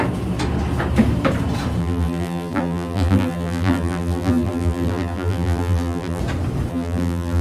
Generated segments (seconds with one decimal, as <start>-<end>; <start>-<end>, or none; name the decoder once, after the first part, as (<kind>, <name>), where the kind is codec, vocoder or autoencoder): 1.8-6.2 (vocoder, BigVGAN v2); 6.7-7.4